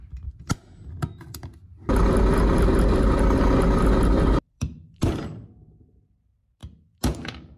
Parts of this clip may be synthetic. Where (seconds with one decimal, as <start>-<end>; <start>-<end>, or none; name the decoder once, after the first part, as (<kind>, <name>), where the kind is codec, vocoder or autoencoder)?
0.0-0.6 (vocoder, BigVGAN v2); 4.4-6.6